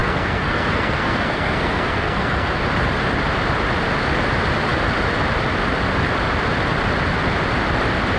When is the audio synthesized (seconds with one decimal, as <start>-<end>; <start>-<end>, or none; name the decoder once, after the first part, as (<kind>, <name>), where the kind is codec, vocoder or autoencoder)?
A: 0.0-2.6 (codec, SNAC)